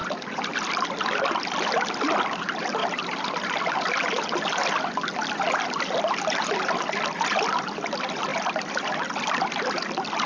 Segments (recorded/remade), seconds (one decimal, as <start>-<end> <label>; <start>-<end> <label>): 0.0-0.5 remade; 0.5-2.8 recorded; 2.8-3.7 remade; 3.7-8.3 recorded; 8.3-8.9 remade; 8.9-10.3 recorded